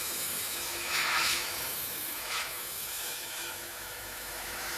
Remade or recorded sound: remade